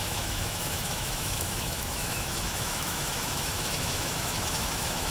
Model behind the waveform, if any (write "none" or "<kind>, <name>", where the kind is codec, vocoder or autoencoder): autoencoder, DAC-VAE